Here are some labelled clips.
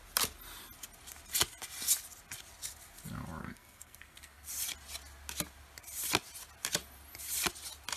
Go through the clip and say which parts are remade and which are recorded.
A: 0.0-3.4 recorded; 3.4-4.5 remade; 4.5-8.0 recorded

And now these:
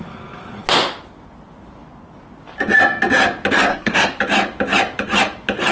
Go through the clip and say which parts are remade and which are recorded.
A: 0.0-3.7 recorded; 3.7-4.2 remade; 4.2-5.7 recorded

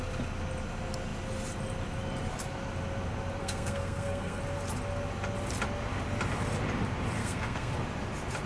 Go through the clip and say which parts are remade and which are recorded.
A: 0.0-3.4 recorded; 3.4-4.4 remade; 4.4-7.2 recorded; 7.2-7.7 remade; 7.7-8.5 recorded

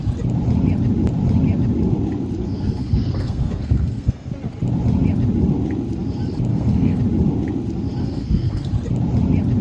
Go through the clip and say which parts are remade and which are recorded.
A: 0.0-2.4 recorded; 2.4-4.3 remade; 4.3-6.5 recorded; 6.5-7.0 remade; 7.0-8.0 recorded; 8.0-8.7 remade; 8.7-9.6 recorded

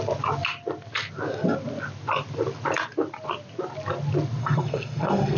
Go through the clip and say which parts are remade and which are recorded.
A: 0.0-4.4 recorded; 4.4-5.4 remade

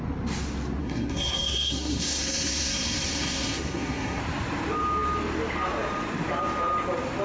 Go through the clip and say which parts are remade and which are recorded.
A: 0.0-0.8 recorded; 0.8-4.2 remade; 4.2-7.2 recorded

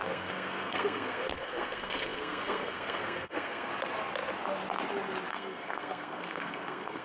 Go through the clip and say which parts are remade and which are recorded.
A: 0.0-3.7 remade; 3.7-5.3 recorded; 5.3-7.0 remade

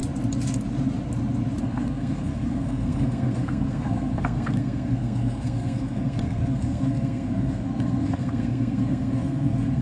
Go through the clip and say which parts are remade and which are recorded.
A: 0.0-1.6 recorded; 1.6-9.8 remade